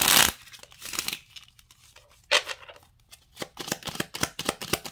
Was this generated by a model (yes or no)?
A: no